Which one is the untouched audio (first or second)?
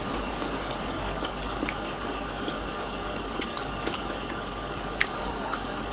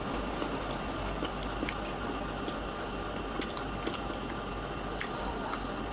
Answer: second